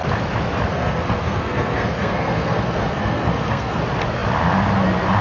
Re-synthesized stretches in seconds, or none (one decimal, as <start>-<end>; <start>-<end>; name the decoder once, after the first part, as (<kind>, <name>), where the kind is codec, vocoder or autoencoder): 0.7-3.8 (codec, SNAC)